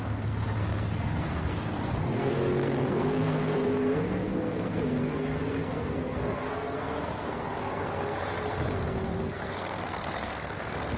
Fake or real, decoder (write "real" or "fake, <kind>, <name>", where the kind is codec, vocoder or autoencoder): fake, codec, SNAC